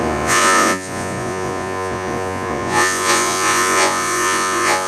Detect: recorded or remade remade